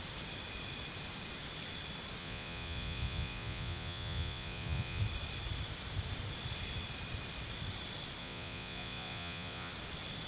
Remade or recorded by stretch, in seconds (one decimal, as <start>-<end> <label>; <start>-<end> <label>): 0.0-2.2 recorded; 2.2-5.0 remade; 5.0-8.2 recorded; 8.2-9.7 remade; 9.7-10.3 recorded